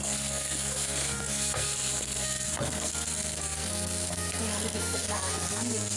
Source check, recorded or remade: remade